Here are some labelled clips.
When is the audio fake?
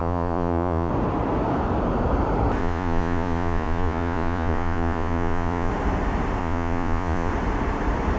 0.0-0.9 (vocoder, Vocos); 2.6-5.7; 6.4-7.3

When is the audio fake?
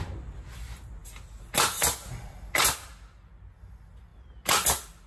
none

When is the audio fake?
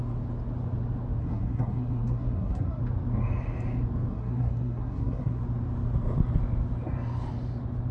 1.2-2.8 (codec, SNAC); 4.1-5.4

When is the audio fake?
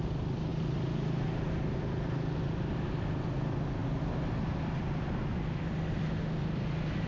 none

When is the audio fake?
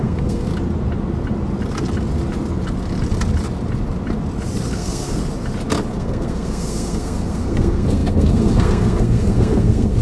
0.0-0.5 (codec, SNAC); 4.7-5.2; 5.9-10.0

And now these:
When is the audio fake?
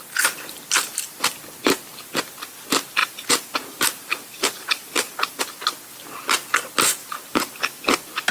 3.0-5.4 (vocoder, BigVGAN v2); 7.0-7.6